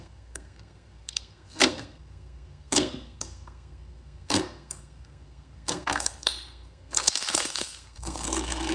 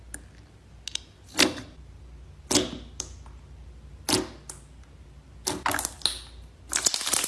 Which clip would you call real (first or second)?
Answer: second